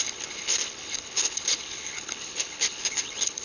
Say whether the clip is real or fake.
fake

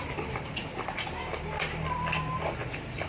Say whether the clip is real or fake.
real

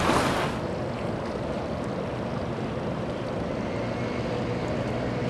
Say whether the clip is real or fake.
real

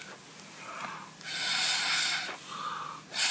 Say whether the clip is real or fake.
real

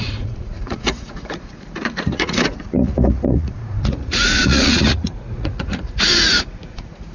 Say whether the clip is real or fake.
fake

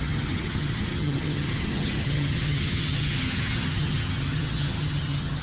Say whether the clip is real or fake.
fake